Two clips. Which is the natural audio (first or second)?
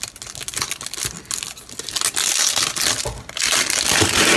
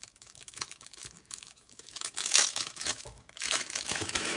first